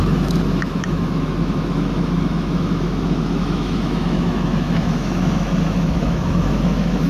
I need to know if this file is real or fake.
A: fake